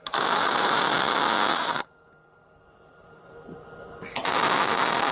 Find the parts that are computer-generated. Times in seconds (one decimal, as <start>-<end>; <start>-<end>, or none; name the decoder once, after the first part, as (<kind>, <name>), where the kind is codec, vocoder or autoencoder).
0.0-0.9 (vocoder, BigVGAN v2); 1.6-4.0